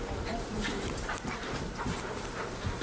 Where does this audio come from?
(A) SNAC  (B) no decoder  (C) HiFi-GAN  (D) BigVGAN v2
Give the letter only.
D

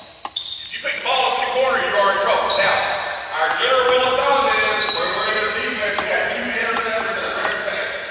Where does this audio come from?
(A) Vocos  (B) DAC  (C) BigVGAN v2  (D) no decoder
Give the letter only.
C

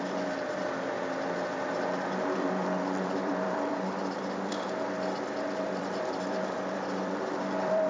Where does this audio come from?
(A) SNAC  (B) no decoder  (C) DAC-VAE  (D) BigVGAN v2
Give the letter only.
D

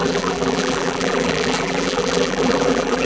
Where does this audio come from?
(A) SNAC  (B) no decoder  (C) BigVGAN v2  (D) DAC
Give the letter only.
C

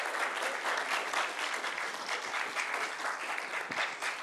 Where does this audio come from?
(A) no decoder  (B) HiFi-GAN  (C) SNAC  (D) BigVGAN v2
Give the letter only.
A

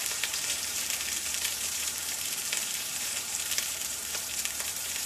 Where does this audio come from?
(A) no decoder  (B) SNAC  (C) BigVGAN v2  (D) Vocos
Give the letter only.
C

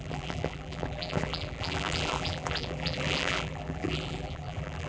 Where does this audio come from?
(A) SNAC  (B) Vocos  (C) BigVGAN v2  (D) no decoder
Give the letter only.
C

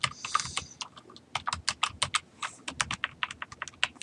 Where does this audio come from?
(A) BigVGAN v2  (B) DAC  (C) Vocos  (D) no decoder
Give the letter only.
D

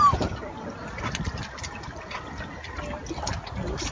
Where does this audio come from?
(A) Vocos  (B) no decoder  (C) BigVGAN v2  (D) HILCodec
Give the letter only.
B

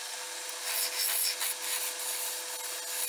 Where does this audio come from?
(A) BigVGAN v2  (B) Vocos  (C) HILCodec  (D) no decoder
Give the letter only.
D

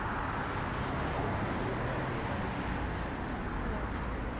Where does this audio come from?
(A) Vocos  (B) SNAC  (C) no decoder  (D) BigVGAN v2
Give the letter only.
C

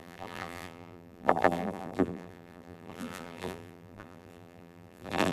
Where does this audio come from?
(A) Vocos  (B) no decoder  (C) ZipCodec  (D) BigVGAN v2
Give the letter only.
D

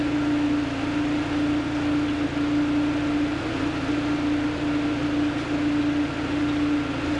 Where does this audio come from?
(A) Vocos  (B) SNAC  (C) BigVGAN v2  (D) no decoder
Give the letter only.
D